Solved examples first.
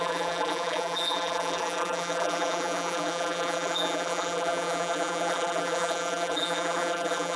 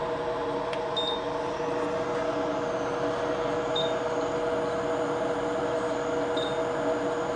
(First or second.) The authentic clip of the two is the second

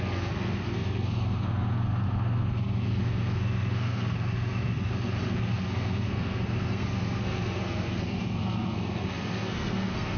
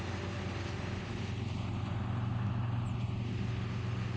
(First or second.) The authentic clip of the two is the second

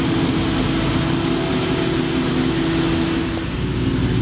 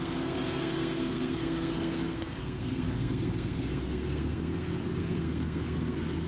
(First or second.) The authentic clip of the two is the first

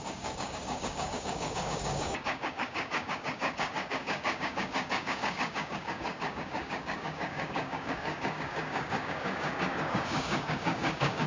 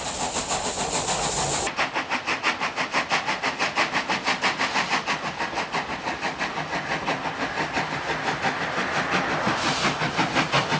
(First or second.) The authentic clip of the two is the second